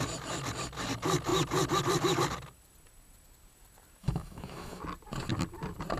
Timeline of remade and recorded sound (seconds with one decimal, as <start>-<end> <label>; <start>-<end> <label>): 0.0-4.0 recorded; 4.0-4.8 remade; 4.8-6.0 recorded